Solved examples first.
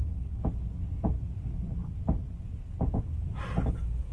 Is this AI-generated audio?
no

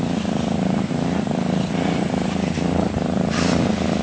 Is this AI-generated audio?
no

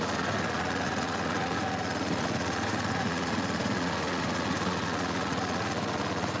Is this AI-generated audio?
yes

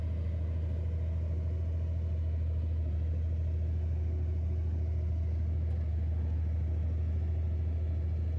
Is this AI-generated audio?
no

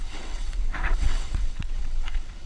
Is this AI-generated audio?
yes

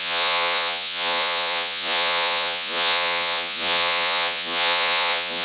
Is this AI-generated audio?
yes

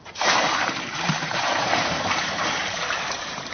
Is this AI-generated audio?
yes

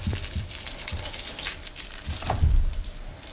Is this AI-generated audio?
no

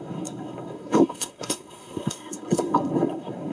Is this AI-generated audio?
yes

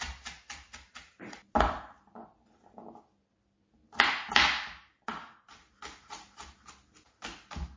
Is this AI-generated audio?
no